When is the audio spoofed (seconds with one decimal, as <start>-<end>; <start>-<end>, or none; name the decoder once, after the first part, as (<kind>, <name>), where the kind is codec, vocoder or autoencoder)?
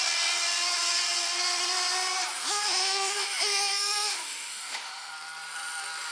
2.4-5.1 (autoencoder, DAC-VAE)